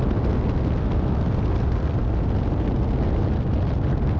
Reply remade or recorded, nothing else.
recorded